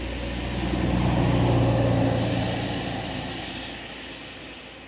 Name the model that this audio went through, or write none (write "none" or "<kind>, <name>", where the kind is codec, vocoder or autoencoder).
none